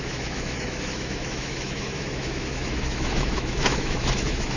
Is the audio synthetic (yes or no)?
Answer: yes